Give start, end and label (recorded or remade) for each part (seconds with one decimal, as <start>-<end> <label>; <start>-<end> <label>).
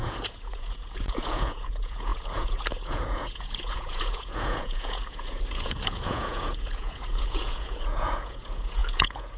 0.0-9.4 remade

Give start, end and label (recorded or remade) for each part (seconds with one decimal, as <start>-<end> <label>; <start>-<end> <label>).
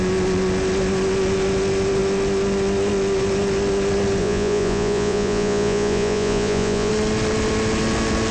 0.0-4.2 recorded; 4.2-6.9 remade; 6.9-8.3 recorded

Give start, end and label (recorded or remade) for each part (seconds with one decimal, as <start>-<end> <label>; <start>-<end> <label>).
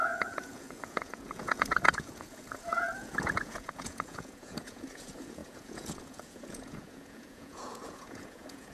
0.0-8.7 remade